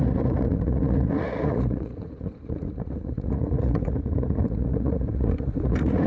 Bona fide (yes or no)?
no